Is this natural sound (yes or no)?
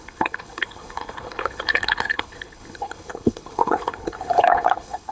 no